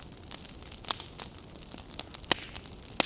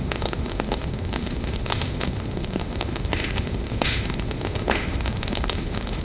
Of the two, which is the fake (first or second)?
second